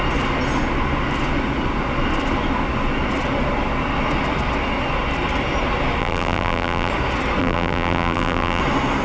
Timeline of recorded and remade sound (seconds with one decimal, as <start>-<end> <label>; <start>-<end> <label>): 0.0-6.0 recorded; 6.0-6.9 remade; 6.9-7.4 recorded; 7.4-8.6 remade; 8.6-9.0 recorded